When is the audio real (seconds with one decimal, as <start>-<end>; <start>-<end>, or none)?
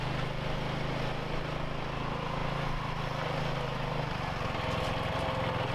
0.0-5.7